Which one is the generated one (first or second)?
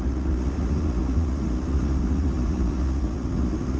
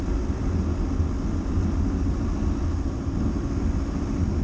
first